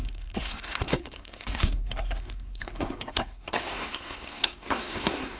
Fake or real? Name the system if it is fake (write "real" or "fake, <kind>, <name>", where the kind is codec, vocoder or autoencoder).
fake, codec, SNAC